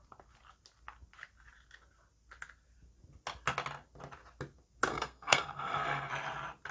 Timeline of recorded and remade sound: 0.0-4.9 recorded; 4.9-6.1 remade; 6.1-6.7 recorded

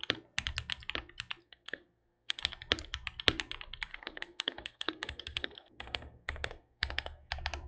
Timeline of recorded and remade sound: 0.0-1.4 recorded; 1.4-2.4 remade; 2.4-3.9 recorded; 3.9-7.3 remade; 7.3-7.7 recorded

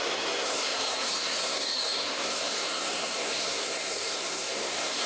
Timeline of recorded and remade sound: 0.0-5.1 remade

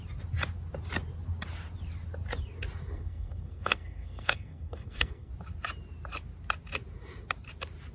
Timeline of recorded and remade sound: 0.0-2.9 recorded; 2.9-5.3 remade; 5.3-7.9 recorded